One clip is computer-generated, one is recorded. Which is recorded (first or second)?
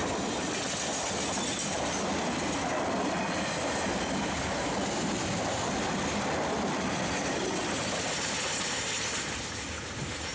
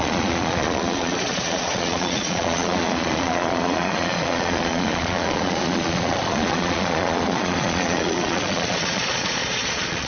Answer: first